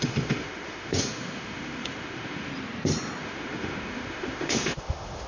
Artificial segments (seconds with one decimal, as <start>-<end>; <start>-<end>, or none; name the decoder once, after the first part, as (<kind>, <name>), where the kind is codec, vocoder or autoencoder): 0.0-2.5 (autoencoder, DAC-VAE); 3.2-5.3